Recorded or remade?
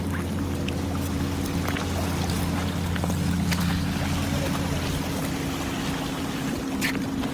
recorded